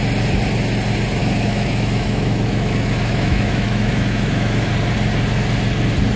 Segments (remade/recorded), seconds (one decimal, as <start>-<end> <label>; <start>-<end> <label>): 0.0-1.2 recorded; 1.2-4.7 remade; 4.7-6.2 recorded